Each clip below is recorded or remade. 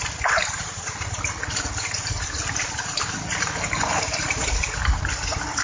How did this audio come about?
recorded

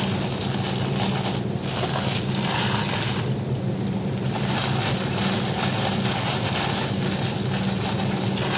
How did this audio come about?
recorded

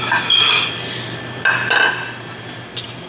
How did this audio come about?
recorded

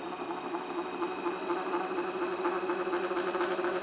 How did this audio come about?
recorded